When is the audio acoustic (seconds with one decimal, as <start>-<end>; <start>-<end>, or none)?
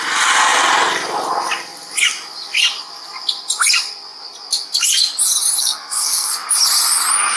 0.0-5.6; 6.3-7.4